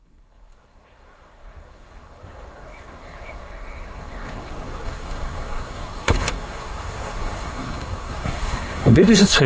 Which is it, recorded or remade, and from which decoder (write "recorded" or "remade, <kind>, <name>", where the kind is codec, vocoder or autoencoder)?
remade, codec, SNAC